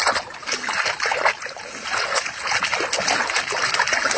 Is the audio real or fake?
real